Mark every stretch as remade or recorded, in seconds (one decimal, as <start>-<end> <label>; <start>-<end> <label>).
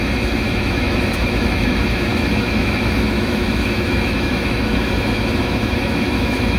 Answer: 0.0-6.6 remade